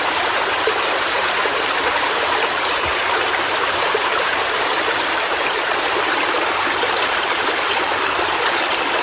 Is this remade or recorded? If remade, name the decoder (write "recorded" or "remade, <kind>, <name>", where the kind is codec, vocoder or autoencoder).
remade, vocoder, BigVGAN v2